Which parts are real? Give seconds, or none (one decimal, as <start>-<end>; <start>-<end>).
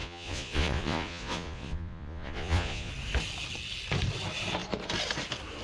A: 2.9-5.6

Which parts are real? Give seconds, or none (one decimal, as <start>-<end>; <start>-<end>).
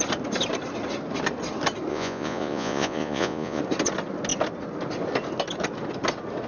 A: 0.0-1.9; 3.6-6.5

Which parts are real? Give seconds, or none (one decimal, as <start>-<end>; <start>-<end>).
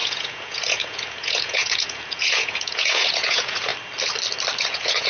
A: 3.7-4.6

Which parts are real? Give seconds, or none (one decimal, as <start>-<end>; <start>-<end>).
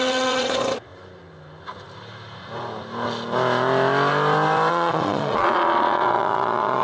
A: 0.9-4.7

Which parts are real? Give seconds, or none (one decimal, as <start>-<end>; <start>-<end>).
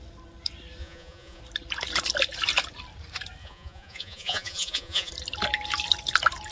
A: 0.0-0.8; 1.4-3.4; 5.1-6.5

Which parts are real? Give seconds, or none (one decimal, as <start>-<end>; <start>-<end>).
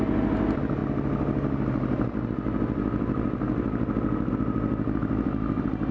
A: 0.0-5.9